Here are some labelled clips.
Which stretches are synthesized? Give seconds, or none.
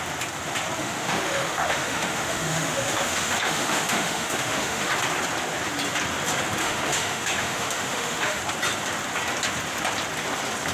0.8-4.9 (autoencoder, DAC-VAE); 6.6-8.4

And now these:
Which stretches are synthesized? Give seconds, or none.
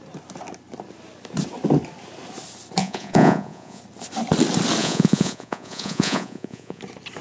2.8-3.8 (vocoder, Vocos); 4.8-6.8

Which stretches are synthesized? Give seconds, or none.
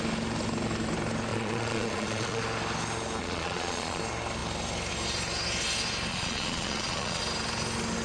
1.3-2.4 (vocoder, Vocos); 3.2-4.0; 6.1-7.2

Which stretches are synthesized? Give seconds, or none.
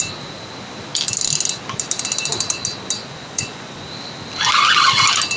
3.0-3.9 (vocoder, Vocos)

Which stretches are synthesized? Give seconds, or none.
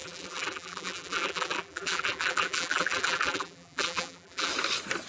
0.0-4.5 (vocoder, BigVGAN v2)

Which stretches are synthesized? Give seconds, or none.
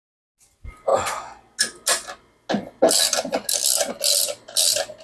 none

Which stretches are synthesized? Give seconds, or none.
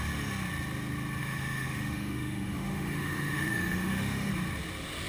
1.2-4.3 (autoencoder, DAC-VAE)